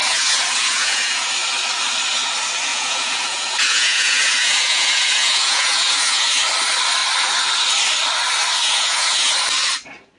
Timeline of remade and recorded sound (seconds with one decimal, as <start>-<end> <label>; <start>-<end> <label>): 0.0-1.3 remade; 1.3-2.7 recorded; 2.7-6.4 remade; 6.4-8.6 recorded; 8.6-9.3 remade; 9.3-10.2 recorded